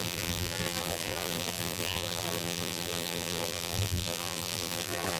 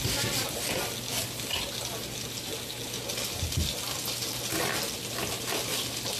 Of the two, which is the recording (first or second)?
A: second